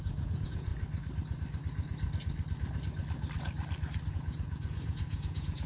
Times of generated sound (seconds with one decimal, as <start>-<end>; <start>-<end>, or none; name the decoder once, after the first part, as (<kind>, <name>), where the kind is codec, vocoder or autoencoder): 0.0-0.7 (vocoder, Vocos); 4.1-5.7